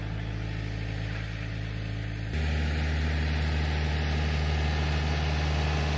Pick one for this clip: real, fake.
real